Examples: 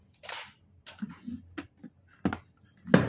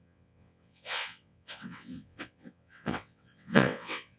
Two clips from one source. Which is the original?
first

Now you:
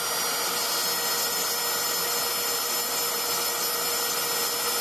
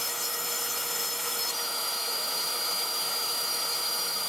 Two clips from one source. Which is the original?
first